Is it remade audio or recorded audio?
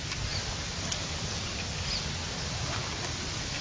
recorded